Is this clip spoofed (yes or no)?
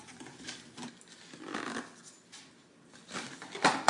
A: no